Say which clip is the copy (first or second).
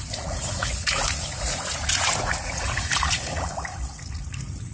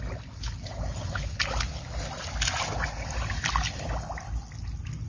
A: first